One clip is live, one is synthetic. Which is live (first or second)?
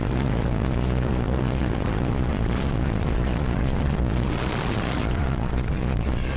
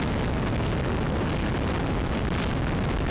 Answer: second